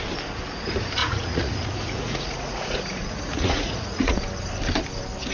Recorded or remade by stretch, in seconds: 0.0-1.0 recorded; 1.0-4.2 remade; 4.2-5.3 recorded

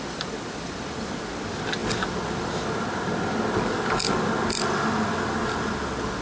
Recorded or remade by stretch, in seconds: 0.0-6.2 recorded

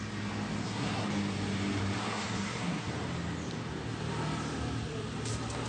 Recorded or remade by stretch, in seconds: 0.0-0.6 recorded; 0.6-1.1 remade; 1.1-2.0 recorded; 2.0-2.9 remade; 2.9-5.7 recorded

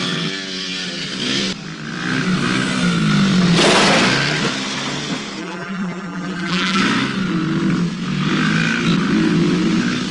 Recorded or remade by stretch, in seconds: 0.0-5.4 recorded; 5.4-6.8 remade; 6.8-10.1 recorded

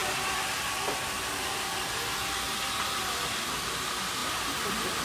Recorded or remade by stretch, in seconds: 0.0-5.0 recorded

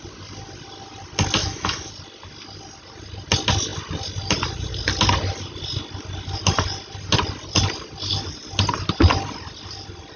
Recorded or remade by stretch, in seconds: 0.0-1.4 recorded; 1.4-1.9 remade; 1.9-10.2 recorded